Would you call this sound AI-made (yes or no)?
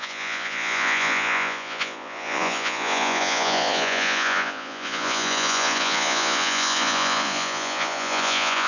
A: yes